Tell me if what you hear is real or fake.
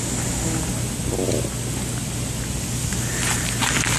real